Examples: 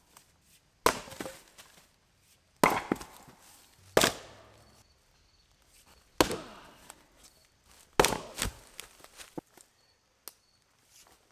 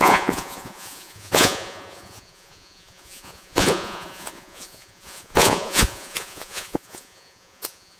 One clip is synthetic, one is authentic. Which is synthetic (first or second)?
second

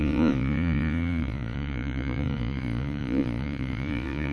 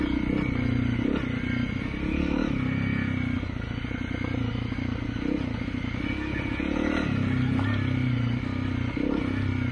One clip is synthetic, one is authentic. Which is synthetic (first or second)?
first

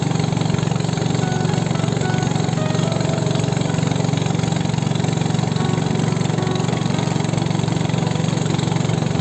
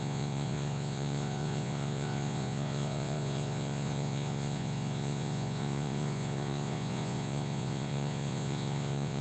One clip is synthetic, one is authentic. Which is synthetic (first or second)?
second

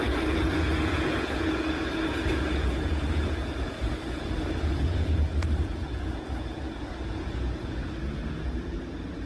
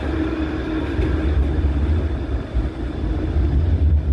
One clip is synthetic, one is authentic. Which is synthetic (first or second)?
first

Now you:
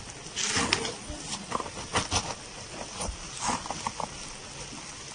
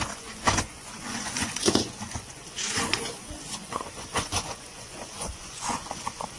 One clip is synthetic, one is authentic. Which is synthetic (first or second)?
second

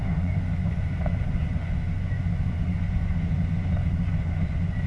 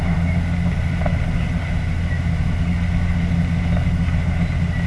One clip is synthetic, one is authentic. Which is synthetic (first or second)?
first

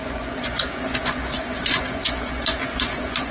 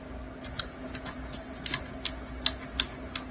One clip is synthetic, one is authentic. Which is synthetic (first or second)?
first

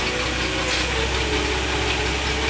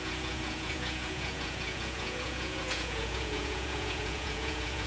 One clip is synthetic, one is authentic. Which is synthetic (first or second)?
second